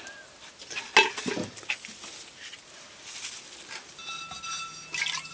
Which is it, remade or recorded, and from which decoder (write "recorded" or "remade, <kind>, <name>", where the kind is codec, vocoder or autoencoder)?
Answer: recorded